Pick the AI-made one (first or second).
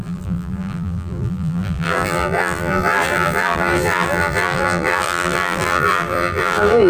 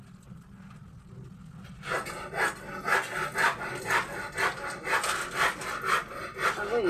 first